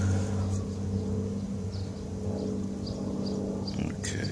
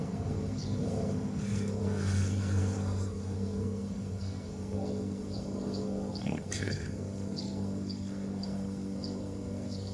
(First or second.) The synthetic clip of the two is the second